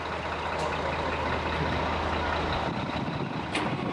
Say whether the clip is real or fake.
real